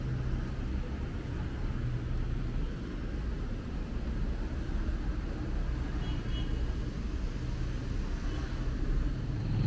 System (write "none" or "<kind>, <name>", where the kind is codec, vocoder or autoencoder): none